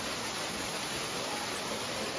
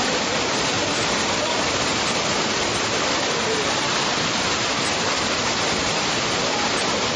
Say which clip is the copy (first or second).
second